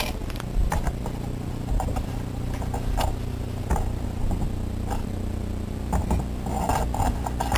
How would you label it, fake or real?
real